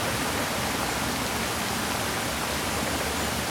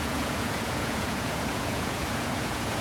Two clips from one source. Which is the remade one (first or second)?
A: second